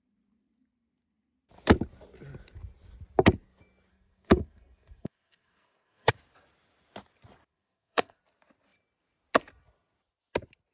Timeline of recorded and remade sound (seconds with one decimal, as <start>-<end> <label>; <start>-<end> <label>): 0.0-3.9 recorded; 3.9-6.1 remade; 6.1-7.5 recorded; 7.5-8.2 remade; 8.2-10.7 recorded